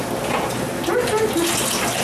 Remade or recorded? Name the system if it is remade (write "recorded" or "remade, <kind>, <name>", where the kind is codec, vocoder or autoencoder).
recorded